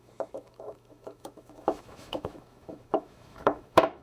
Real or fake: fake